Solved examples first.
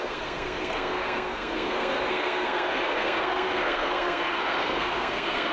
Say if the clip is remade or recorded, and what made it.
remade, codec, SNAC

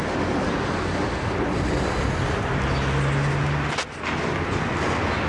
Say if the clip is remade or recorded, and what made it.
recorded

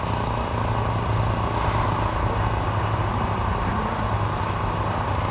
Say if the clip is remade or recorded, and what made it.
recorded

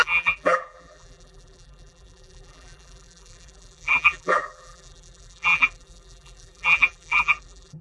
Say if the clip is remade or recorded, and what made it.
remade, vocoder, BigVGAN v2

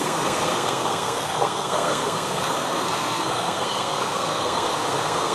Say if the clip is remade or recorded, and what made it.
remade, codec, SNAC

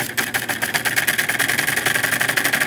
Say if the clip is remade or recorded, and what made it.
recorded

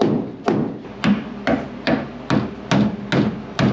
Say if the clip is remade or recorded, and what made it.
recorded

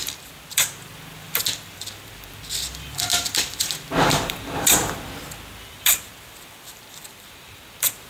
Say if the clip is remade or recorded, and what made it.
remade, vocoder, BigVGAN v2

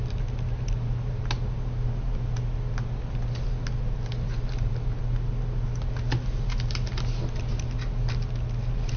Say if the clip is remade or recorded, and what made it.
recorded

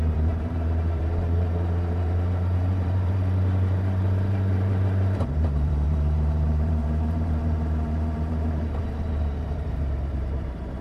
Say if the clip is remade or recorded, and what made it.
remade, vocoder, BigVGAN v2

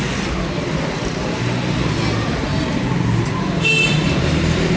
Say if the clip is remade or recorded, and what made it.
recorded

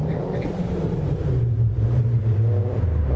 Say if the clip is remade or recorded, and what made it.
remade, vocoder, BigVGAN v2